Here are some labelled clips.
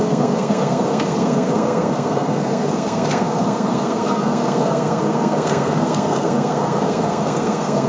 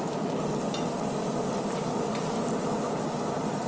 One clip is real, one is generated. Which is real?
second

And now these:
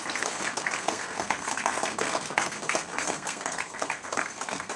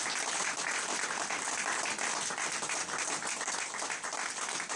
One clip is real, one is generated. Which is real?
second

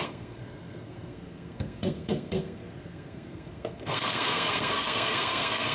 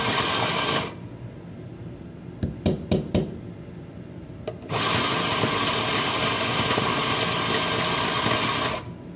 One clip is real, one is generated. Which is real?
second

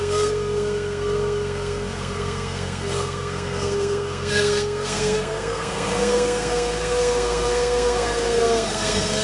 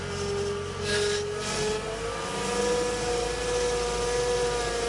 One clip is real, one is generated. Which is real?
second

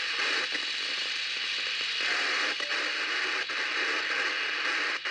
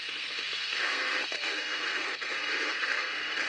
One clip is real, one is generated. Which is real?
first